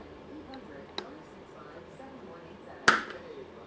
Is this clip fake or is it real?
real